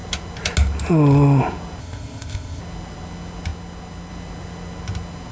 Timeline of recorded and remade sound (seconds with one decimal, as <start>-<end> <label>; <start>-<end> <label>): 0.0-1.8 recorded; 1.8-2.6 remade; 2.6-5.3 recorded